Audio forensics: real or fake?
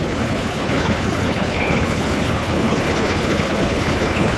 fake